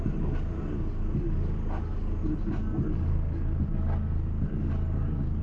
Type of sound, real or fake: real